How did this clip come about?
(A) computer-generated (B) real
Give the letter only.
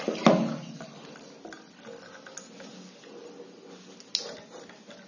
B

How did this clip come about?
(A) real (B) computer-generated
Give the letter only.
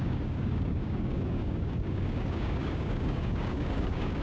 B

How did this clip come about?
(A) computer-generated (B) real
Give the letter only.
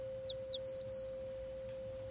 B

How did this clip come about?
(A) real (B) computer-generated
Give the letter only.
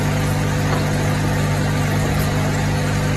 A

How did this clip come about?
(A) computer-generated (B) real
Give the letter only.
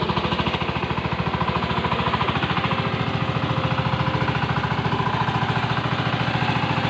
B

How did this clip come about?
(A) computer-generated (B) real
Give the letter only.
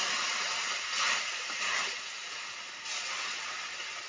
B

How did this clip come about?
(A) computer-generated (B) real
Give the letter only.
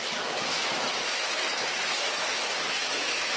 A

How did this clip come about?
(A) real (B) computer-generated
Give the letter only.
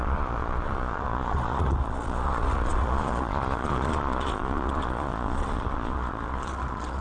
B